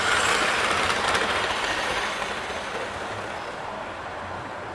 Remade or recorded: recorded